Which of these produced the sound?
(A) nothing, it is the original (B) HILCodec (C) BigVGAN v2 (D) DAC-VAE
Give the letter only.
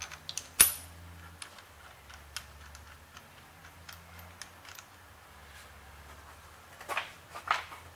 A